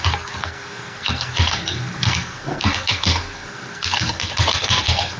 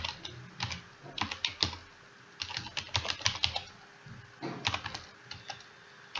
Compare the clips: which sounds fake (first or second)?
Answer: first